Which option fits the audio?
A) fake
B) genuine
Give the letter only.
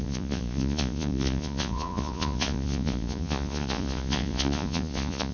A